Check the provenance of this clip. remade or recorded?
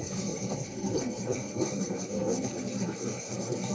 remade